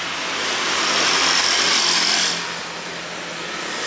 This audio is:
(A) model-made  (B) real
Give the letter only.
B